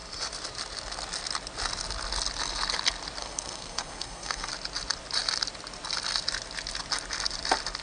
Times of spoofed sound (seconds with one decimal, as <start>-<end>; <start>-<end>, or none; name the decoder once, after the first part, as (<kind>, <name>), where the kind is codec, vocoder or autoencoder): 3.2-4.5 (codec, SNAC)